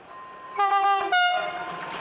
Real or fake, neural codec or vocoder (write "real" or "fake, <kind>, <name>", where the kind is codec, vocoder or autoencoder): real